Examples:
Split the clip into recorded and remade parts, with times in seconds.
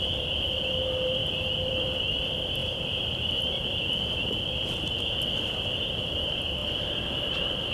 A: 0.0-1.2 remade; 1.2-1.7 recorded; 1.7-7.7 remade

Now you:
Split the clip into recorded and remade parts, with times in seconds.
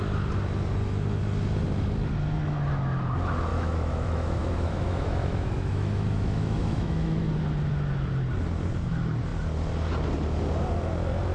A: 0.0-3.5 recorded; 3.5-7.2 remade; 7.2-11.3 recorded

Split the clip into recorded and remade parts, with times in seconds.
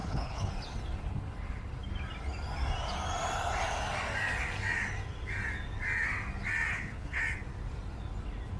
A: 0.0-0.5 remade; 0.5-6.7 recorded; 6.7-7.2 remade; 7.2-8.6 recorded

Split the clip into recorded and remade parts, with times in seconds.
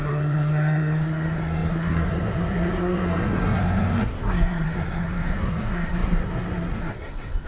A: 0.0-7.5 remade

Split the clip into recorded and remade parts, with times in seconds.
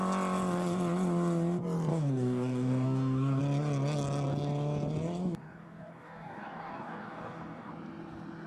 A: 0.0-1.9 recorded; 1.9-3.4 remade; 3.4-5.2 recorded; 5.2-7.7 remade; 7.7-8.5 recorded